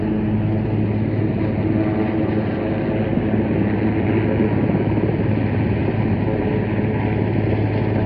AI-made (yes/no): no